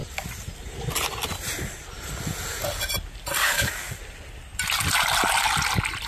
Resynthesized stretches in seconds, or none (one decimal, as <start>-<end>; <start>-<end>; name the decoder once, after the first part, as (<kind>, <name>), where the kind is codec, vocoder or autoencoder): 3.4-4.0 (codec, DAC)